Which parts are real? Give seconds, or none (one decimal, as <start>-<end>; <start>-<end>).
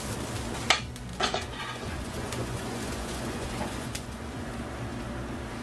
0.0-1.1; 4.5-5.6